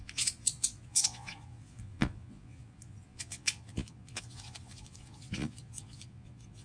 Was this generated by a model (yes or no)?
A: yes